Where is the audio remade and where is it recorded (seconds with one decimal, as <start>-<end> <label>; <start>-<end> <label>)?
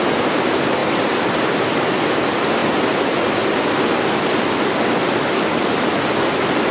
0.0-6.7 recorded